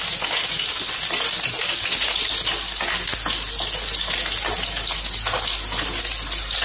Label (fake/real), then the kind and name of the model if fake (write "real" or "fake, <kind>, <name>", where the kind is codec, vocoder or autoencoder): real